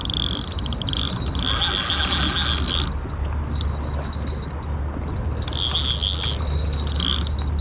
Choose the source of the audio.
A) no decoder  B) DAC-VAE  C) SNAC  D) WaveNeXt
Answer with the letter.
A